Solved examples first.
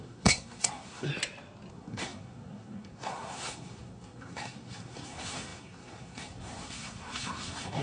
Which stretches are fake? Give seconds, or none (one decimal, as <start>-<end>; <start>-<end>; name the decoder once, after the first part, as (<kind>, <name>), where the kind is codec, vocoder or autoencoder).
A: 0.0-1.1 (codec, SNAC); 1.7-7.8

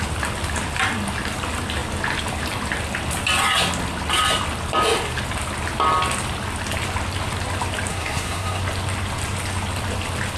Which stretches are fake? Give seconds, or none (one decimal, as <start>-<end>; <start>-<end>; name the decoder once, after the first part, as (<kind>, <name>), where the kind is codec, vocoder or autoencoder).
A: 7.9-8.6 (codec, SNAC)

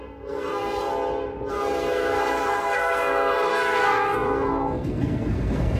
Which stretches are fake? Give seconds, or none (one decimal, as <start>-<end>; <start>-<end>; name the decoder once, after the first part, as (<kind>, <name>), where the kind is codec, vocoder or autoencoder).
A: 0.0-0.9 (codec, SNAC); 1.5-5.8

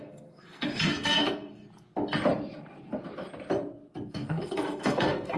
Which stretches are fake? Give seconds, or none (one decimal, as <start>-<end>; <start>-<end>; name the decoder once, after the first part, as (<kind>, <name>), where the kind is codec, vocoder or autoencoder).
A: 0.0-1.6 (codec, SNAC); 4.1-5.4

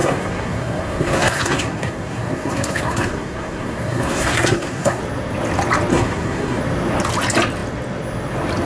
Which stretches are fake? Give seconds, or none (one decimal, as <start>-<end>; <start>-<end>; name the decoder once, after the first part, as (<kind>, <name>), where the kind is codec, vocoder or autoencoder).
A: 0.0-5.0 (codec, SNAC); 5.9-6.6

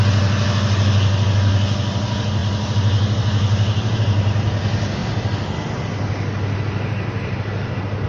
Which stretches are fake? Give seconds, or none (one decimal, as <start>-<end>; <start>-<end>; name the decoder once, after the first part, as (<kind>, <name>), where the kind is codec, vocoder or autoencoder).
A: none

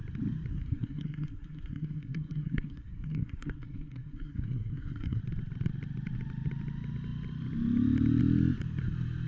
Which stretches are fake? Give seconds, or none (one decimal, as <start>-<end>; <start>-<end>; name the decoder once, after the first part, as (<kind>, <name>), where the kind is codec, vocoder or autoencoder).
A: 0.5-5.2 (codec, SNAC)

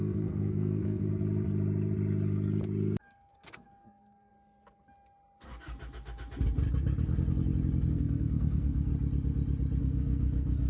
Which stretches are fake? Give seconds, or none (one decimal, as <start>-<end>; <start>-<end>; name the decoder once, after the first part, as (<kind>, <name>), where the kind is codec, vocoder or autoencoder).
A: 0.0-1.1 (codec, SNAC); 3.0-4.3; 7.9-8.9; 9.8-10.7